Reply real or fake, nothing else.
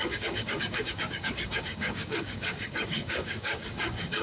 fake